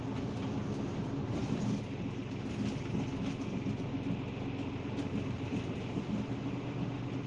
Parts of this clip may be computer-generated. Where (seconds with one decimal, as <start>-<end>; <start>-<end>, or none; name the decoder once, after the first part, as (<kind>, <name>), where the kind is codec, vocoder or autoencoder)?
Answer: 1.2-1.8 (vocoder, BigVGAN v2); 5.1-6.5